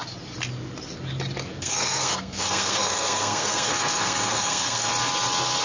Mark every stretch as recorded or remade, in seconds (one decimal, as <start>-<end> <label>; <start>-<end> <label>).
0.0-1.5 recorded; 1.5-4.9 remade; 4.9-5.6 recorded

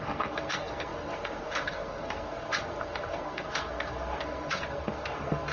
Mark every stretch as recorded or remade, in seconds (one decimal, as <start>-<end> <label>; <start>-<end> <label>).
0.0-5.5 remade

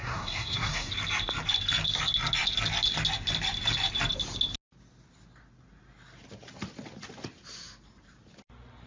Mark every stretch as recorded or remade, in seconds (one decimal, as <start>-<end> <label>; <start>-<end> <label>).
0.0-0.9 remade; 0.9-8.9 recorded

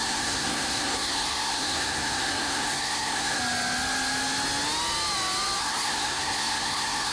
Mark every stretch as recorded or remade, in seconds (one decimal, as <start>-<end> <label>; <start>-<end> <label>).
0.0-3.4 remade; 3.4-5.6 recorded; 5.6-7.1 remade

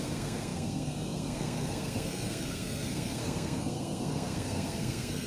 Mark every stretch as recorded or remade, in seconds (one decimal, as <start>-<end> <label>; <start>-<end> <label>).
0.0-5.3 remade

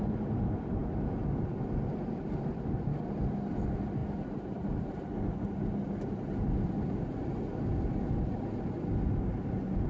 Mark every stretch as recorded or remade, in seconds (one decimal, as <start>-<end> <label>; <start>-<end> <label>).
0.0-9.9 recorded

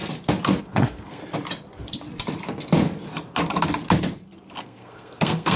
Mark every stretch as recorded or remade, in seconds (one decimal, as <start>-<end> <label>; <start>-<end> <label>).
0.0-0.6 recorded; 0.6-1.2 remade; 1.2-4.6 recorded; 4.6-5.6 remade